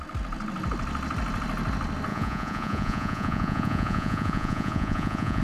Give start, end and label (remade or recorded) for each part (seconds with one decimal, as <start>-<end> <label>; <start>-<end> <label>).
0.0-2.1 recorded; 2.1-5.4 remade